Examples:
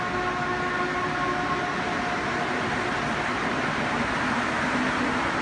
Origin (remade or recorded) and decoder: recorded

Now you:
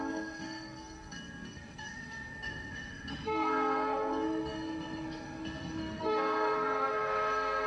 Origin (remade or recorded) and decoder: remade, codec, SNAC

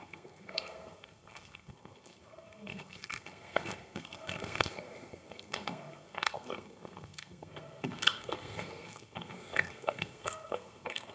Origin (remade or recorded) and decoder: remade, codec, SNAC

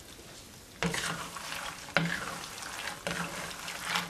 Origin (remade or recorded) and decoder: recorded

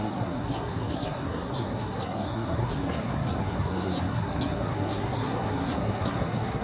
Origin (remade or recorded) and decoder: remade, codec, SNAC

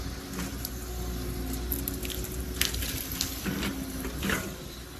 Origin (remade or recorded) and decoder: recorded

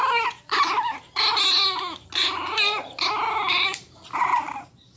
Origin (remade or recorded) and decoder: recorded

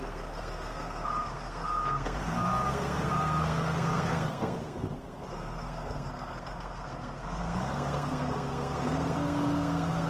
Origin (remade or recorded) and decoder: remade, codec, SNAC